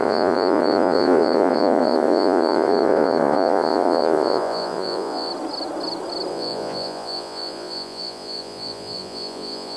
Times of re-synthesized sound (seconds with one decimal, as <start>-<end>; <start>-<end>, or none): 0.0-5.3; 6.3-9.8